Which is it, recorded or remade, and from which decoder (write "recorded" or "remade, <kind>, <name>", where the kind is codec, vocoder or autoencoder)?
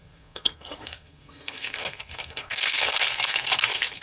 remade, codec, SNAC